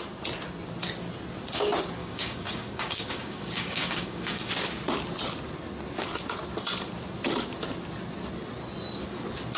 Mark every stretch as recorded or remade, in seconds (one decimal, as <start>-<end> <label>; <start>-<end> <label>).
0.0-2.0 recorded; 2.0-4.5 remade; 4.5-9.6 recorded

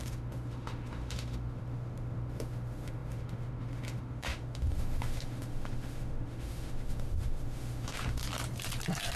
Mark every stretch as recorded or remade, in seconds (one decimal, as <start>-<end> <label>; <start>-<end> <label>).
0.0-8.2 remade; 8.2-9.2 recorded

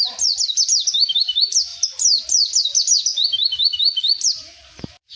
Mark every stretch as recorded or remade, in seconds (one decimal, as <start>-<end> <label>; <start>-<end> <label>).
0.0-5.2 recorded

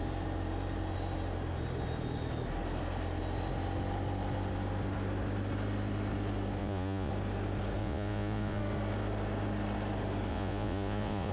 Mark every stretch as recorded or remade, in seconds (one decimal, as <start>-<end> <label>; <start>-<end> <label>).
0.0-6.6 recorded; 6.6-7.1 remade; 7.1-7.8 recorded; 7.8-8.6 remade; 8.6-10.3 recorded; 10.3-11.3 remade